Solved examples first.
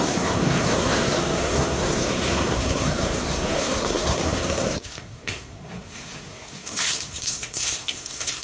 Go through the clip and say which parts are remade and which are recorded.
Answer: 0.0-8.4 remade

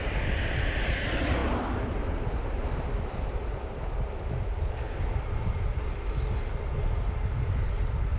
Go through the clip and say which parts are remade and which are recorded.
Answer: 0.0-8.2 recorded

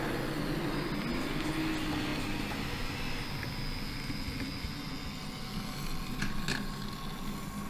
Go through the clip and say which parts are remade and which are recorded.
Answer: 0.0-7.7 recorded

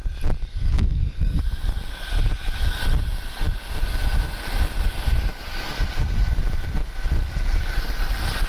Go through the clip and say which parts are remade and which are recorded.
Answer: 0.0-0.5 recorded; 0.5-1.4 remade; 1.4-8.5 recorded

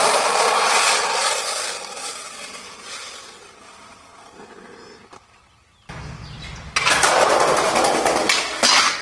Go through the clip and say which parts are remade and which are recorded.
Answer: 0.0-9.0 recorded

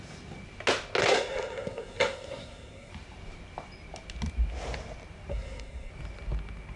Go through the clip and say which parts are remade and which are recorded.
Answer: 0.0-1.0 recorded; 1.0-2.9 remade; 2.9-5.3 recorded; 5.3-5.9 remade; 5.9-6.8 recorded